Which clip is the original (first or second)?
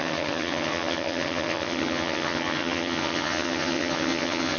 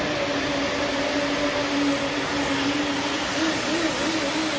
second